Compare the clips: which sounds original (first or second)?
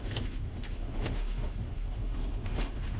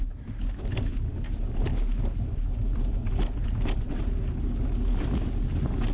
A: second